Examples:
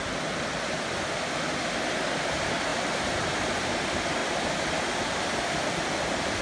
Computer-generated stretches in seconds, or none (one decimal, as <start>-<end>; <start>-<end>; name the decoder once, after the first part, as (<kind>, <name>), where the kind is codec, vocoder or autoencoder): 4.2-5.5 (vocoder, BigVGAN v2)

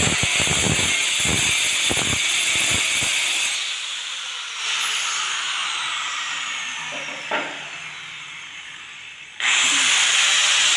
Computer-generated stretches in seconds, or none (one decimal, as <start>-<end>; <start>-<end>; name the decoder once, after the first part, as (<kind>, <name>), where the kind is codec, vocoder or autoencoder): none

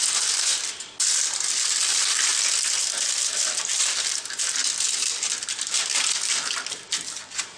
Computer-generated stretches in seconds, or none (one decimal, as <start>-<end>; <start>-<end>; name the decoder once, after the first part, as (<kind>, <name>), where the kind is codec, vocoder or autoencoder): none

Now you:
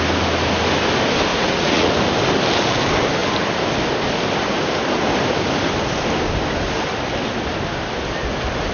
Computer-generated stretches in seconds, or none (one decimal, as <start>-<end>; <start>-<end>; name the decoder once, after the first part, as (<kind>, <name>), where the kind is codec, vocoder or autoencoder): 1.3-1.9 (vocoder, Vocos)